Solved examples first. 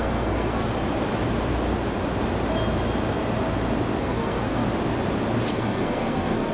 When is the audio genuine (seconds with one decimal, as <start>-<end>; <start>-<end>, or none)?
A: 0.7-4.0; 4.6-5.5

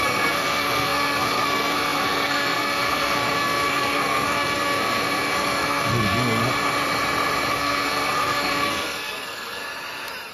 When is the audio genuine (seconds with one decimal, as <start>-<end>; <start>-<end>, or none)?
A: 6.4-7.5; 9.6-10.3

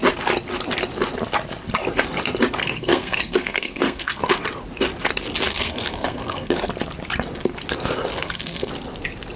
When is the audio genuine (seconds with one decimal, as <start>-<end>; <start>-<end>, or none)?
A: 0.0-2.6; 4.4-5.5; 6.7-8.1; 8.7-9.4

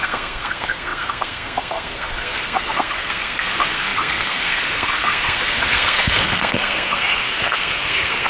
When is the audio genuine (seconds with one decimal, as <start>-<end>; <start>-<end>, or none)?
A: none

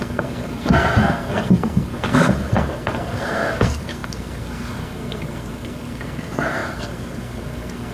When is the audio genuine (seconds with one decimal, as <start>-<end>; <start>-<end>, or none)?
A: none

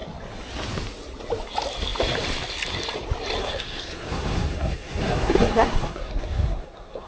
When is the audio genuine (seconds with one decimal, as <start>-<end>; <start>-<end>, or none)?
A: 0.0-3.4

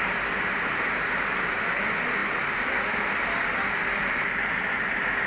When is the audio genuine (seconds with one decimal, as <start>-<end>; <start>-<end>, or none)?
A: 0.0-5.3